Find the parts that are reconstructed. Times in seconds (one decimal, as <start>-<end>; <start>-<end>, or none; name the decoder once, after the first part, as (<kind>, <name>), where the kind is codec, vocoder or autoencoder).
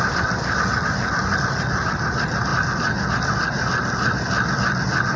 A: none